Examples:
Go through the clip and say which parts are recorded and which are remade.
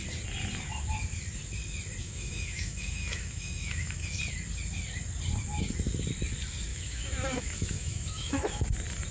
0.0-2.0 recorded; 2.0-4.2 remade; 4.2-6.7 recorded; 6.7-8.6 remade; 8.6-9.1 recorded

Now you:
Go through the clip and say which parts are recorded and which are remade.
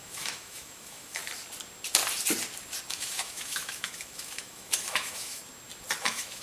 0.0-1.2 remade; 1.2-2.9 recorded; 2.9-5.4 remade; 5.4-6.0 recorded; 6.0-6.4 remade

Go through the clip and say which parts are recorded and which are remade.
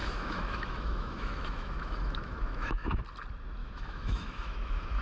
0.0-3.0 remade; 3.0-3.6 recorded; 3.6-5.0 remade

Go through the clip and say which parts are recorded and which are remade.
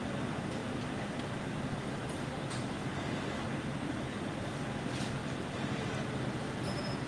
0.0-7.1 recorded